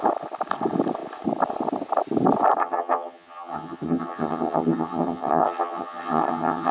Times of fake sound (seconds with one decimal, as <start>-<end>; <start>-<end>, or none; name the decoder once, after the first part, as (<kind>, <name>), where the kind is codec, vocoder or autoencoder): 2.6-6.7 (vocoder, HiFi-GAN)